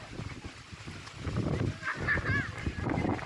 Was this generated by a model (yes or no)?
no